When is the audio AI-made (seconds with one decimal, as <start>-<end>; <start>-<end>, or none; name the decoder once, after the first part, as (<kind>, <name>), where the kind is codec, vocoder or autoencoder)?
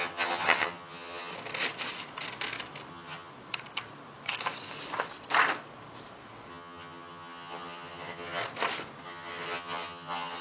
0.0-1.3 (vocoder, HiFi-GAN); 2.9-3.3; 6.5-8.4; 9.0-10.4